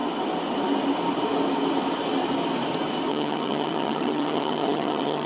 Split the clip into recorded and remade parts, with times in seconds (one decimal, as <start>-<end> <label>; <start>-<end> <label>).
0.0-3.1 recorded; 3.1-5.3 remade